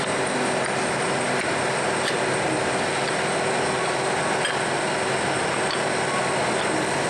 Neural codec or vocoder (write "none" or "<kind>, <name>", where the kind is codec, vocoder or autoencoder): none